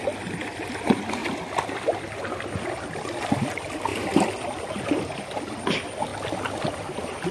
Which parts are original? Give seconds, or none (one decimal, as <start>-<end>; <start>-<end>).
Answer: 0.0-7.3